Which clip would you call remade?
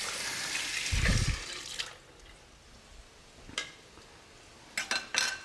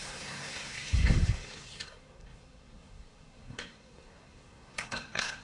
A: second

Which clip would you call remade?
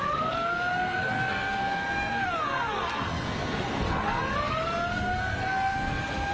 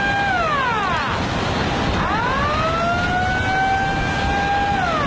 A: first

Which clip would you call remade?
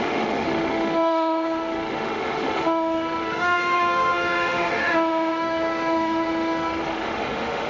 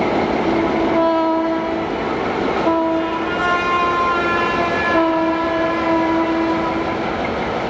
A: first